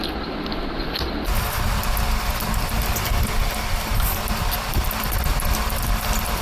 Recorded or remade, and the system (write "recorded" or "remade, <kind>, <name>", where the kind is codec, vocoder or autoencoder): recorded